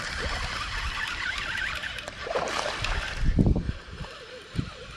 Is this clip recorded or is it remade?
remade